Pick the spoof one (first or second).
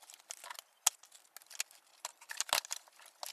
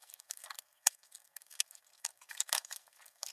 second